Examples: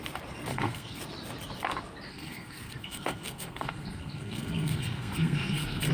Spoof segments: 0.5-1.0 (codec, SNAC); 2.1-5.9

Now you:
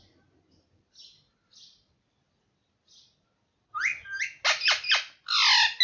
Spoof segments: none